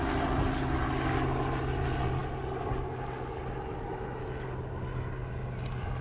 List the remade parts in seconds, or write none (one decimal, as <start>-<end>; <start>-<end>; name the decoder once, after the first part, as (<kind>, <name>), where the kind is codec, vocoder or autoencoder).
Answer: none